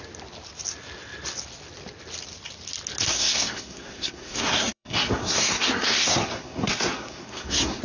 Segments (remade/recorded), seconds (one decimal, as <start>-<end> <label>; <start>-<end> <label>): 0.0-3.1 recorded; 3.1-7.8 remade